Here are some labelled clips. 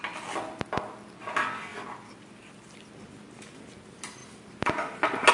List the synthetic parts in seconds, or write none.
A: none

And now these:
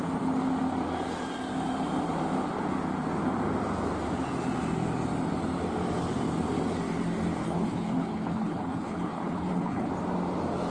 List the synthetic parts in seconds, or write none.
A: 7.4-9.9 (codec, HILCodec)

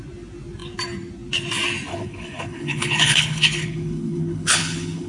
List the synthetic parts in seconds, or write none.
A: 1.9-5.1 (codec, HILCodec)

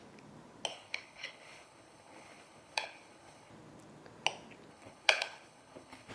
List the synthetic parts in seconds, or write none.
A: 0.7-3.5 (codec, HILCodec); 4.7-6.1

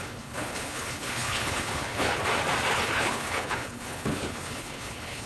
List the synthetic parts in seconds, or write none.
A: 0.0-2.2 (codec, HILCodec); 2.7-5.3

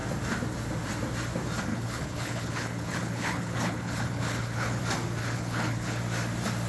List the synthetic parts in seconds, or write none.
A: 1.7-4.8 (codec, HILCodec); 5.2-6.0

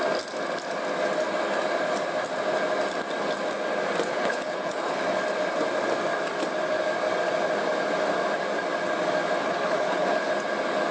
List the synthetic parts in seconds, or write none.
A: 4.1-5.0 (codec, HILCodec); 9.4-10.3

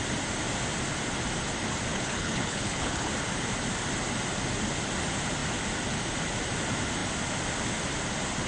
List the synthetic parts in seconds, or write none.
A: 1.9-3.1 (codec, HILCodec)